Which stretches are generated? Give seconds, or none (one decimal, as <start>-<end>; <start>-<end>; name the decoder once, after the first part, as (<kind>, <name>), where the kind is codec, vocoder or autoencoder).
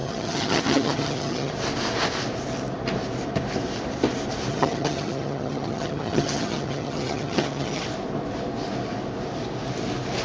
0.0-1.5 (vocoder, HiFi-GAN); 4.5-7.8